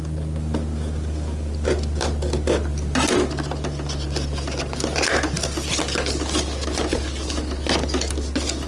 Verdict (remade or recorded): recorded